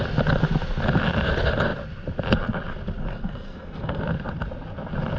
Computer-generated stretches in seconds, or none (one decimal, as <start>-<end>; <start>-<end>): 3.1-4.0